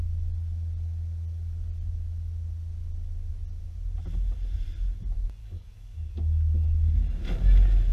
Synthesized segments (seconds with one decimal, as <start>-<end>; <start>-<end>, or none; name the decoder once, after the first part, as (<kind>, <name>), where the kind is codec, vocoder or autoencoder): 5.4-6.1 (codec, DAC)